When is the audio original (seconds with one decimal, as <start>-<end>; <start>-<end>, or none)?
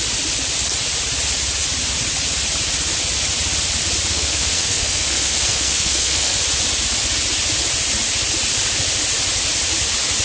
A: 0.0-4.1; 6.4-10.2